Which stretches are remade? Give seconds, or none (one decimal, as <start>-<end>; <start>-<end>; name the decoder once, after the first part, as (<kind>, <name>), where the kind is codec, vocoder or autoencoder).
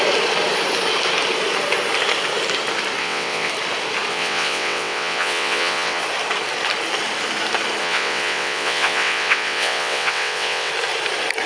3.0-3.5 (vocoder, WaveNeXt); 4.1-6.0; 7.8-10.7